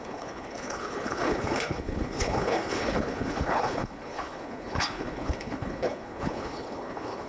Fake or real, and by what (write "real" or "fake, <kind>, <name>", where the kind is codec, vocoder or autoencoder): fake, codec, HILCodec